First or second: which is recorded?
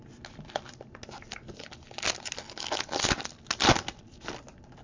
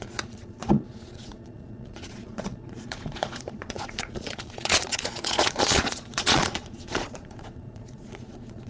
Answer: first